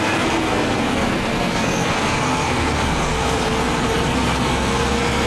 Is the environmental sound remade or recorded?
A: remade